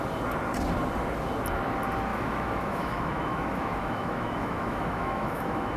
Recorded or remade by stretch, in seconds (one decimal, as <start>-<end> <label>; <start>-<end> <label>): 0.0-2.1 recorded; 2.1-5.8 remade